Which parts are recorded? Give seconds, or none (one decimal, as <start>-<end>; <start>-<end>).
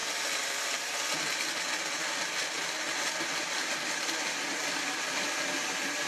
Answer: 0.0-6.1